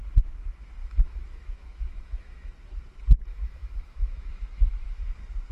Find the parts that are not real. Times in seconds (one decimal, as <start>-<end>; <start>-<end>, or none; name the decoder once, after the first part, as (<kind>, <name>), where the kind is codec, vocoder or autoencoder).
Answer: 0.8-2.5 (autoencoder, DAC-VAE); 3.3-5.0